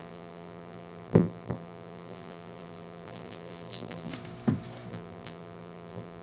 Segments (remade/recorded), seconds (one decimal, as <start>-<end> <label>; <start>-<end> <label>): 0.0-4.1 remade; 4.1-4.9 recorded; 4.9-6.2 remade